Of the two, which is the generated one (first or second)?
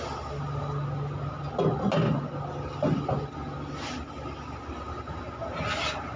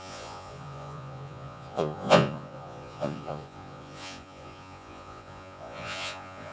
second